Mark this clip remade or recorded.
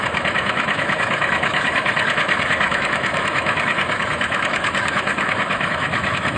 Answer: remade